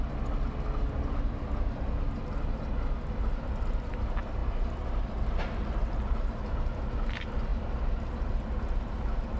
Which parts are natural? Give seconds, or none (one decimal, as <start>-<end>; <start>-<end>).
0.0-4.4; 5.0-9.4